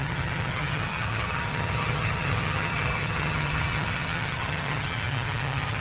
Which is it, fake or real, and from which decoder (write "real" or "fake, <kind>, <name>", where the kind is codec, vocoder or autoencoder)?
fake, vocoder, HiFi-GAN